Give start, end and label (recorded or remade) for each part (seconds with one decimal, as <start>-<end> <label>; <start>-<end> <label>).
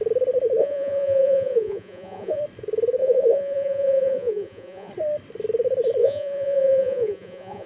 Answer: 0.0-0.6 recorded; 0.6-2.4 remade; 2.4-3.0 recorded; 3.0-4.9 remade; 4.9-6.0 recorded; 6.0-7.7 remade